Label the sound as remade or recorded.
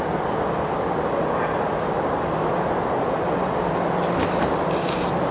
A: recorded